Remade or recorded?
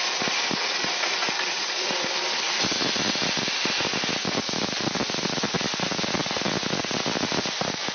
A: recorded